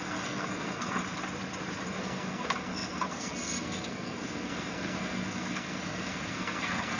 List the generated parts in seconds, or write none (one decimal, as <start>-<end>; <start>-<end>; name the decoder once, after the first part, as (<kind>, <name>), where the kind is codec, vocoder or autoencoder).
0.0-1.0 (codec, SNAC); 2.0-7.0